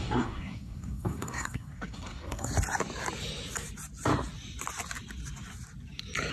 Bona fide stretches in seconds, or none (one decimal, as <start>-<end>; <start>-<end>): 2.5-6.3